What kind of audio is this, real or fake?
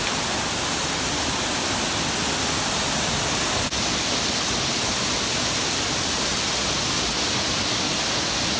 real